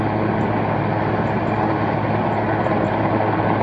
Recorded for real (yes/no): yes